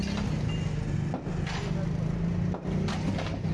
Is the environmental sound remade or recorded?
recorded